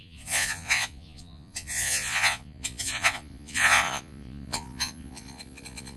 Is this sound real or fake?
fake